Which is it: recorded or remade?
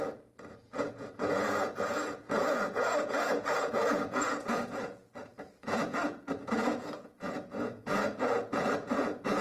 remade